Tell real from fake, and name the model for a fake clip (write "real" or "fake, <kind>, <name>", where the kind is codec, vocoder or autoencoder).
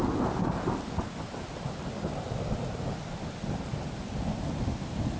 real